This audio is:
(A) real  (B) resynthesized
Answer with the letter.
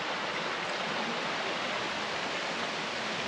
A